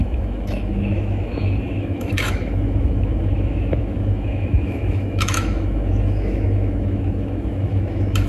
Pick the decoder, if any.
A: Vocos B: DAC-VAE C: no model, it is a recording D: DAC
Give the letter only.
B